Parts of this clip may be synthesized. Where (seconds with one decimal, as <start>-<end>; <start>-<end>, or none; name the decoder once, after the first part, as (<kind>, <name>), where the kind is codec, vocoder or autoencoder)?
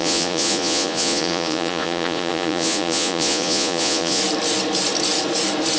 0.0-4.2 (vocoder, Vocos)